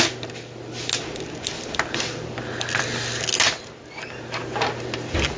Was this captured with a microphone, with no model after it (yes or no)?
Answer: yes